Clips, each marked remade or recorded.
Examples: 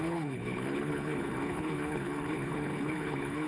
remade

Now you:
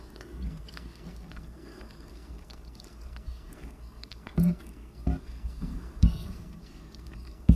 remade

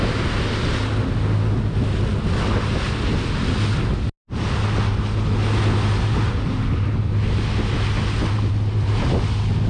recorded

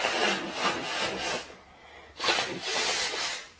recorded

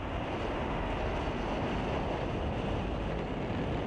recorded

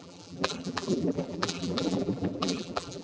remade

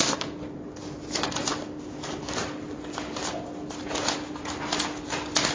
recorded